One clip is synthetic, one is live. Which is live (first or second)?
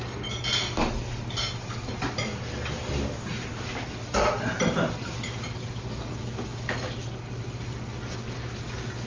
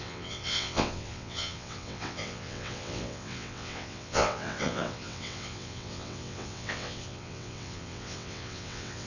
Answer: first